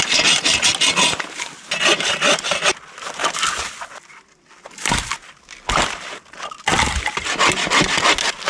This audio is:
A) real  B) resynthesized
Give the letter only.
A